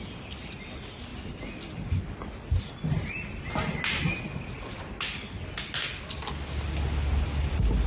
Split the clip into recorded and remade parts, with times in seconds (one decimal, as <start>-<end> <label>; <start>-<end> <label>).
0.0-7.9 recorded